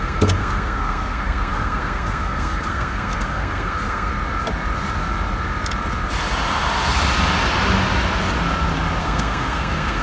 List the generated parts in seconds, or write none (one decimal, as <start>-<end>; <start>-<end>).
0.0-4.1; 9.0-10.0